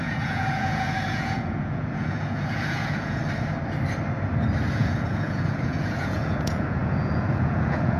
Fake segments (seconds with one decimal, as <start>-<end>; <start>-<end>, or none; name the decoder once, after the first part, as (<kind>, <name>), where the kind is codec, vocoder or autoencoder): 0.0-3.2 (vocoder, Vocos); 4.6-8.0